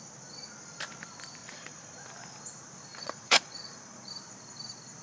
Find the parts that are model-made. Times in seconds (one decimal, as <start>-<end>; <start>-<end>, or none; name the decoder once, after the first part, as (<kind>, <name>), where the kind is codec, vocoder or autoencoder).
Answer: 1.4-2.0 (vocoder, Vocos); 2.9-4.1